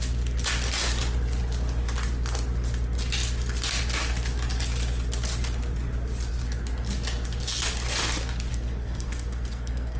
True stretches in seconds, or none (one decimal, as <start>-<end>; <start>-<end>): 0.0-8.5